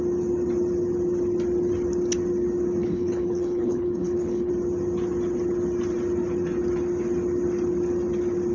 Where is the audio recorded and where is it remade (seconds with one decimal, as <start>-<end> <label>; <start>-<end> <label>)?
0.0-2.8 recorded; 2.8-4.5 remade; 4.5-8.5 recorded